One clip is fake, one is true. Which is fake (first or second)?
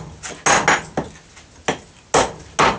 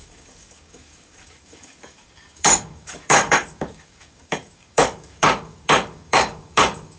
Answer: second